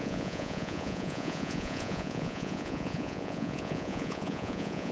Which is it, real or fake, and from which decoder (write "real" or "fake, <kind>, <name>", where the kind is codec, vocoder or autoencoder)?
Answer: fake, vocoder, Vocos